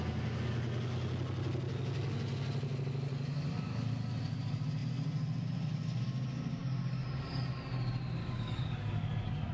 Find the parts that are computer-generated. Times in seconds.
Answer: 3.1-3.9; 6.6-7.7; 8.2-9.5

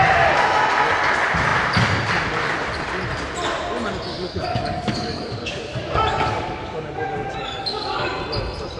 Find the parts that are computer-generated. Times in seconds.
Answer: 4.1-8.2

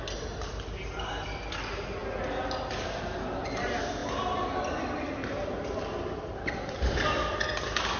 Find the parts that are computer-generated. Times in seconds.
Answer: none

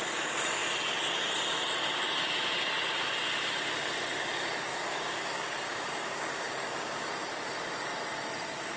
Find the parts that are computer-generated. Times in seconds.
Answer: 4.7-7.1

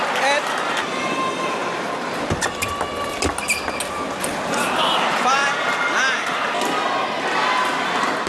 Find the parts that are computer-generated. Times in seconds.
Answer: none

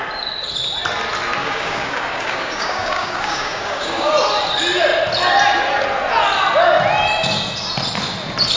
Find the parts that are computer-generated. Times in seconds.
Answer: 1.4-4.1